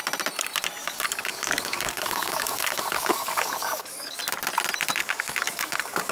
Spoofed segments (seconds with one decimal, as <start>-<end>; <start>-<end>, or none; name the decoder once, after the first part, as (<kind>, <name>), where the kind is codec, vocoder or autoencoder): 0.8-4.2 (codec, DAC); 5.0-6.1